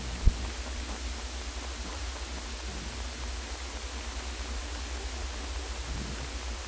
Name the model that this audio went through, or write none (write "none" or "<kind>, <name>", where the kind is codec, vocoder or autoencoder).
none